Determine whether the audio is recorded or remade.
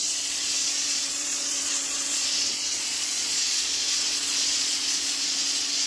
remade